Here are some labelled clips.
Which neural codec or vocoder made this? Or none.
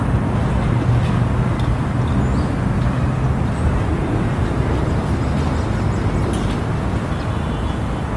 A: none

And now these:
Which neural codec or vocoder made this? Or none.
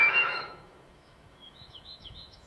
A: autoencoder, DAC-VAE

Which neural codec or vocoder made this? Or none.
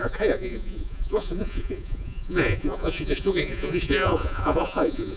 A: vocoder, Vocos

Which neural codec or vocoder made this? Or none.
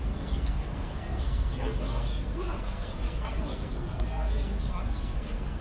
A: codec, SNAC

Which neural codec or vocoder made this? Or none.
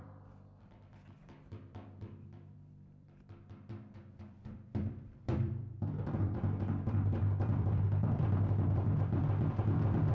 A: vocoder, BigVGAN v2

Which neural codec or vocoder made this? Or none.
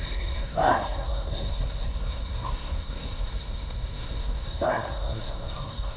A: codec, SNAC